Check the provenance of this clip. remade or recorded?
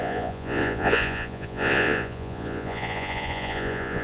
remade